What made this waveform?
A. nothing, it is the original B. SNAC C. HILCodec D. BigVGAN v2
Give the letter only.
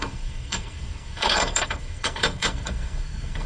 B